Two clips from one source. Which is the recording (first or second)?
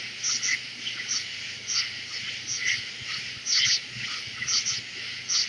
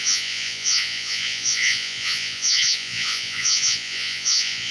first